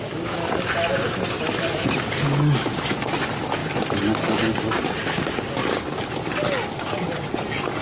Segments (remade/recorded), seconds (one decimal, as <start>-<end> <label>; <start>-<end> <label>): 0.0-7.8 recorded